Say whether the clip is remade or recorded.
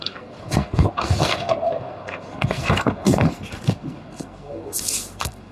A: remade